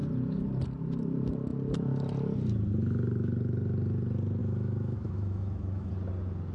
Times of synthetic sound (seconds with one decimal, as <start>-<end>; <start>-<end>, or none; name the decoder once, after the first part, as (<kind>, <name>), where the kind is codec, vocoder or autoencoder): 4.4-5.9 (autoencoder, DAC-VAE)

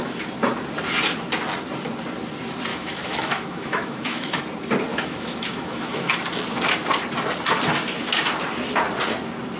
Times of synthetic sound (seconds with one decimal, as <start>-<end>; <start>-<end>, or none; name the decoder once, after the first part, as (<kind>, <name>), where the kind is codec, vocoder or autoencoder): 2.7-4.4 (autoencoder, DAC-VAE); 4.9-6.1

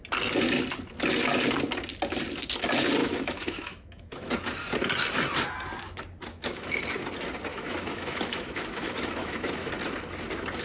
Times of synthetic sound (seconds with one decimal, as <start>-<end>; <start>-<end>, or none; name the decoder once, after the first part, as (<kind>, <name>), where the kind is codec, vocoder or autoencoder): 3.0-4.3 (autoencoder, DAC-VAE); 6.3-6.8; 7.5-9.7

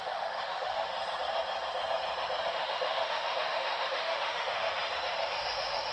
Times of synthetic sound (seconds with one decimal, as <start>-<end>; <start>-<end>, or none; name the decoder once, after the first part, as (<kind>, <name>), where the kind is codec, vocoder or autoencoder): 0.0-0.9 (autoencoder, DAC-VAE); 2.5-4.7; 5.3-5.9

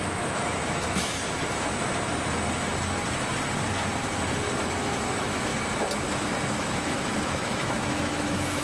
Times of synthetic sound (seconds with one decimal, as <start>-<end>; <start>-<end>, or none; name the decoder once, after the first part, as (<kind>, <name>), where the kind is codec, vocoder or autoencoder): 0.0-1.2 (autoencoder, DAC-VAE); 4.6-5.5; 6.5-8.6

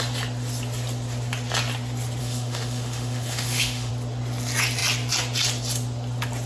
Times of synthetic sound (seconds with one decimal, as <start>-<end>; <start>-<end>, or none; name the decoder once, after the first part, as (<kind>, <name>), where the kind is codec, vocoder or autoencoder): 2.2-3.9 (autoencoder, DAC-VAE)

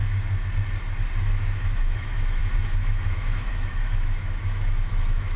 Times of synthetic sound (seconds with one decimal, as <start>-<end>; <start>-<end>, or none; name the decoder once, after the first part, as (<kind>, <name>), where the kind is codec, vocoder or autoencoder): 1.2-5.4 (autoencoder, DAC-VAE)